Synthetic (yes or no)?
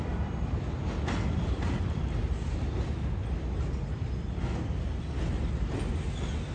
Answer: no